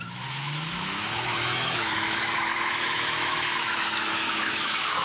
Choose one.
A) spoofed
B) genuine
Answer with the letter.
A